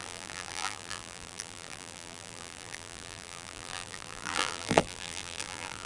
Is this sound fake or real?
fake